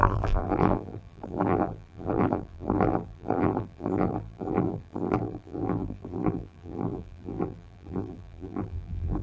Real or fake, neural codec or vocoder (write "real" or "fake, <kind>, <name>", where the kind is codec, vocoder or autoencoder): fake, vocoder, BigVGAN v2